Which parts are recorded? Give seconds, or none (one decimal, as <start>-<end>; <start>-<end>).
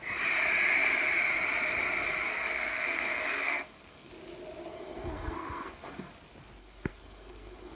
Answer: 0.0-2.3; 4.1-4.7; 6.1-6.6